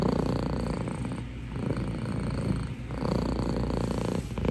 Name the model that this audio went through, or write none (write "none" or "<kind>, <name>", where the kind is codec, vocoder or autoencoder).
none